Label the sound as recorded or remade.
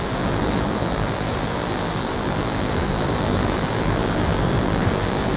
remade